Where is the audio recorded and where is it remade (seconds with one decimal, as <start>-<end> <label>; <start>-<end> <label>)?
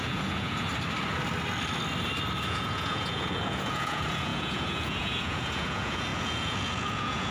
0.0-0.7 remade; 0.7-2.4 recorded; 2.4-7.3 remade